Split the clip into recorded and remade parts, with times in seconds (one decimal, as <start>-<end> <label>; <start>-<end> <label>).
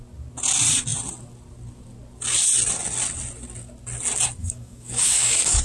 0.0-4.4 recorded; 4.4-5.6 remade